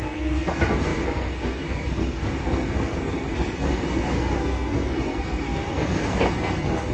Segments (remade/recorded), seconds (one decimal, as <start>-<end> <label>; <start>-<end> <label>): 0.0-6.9 remade